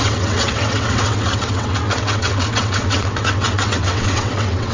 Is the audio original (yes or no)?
no